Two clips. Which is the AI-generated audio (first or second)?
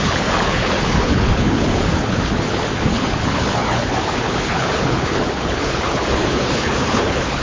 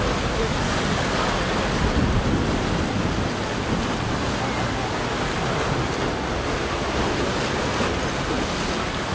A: first